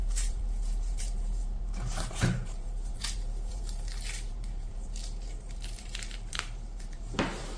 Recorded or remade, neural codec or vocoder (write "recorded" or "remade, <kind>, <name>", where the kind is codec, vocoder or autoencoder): remade, vocoder, BigVGAN v2